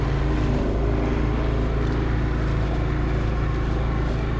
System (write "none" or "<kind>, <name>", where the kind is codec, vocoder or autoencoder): none